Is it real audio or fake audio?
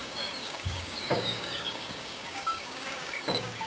fake